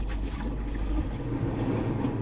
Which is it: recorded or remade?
recorded